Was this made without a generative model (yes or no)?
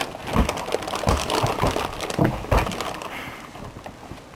yes